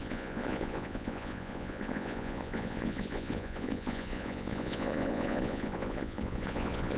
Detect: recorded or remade remade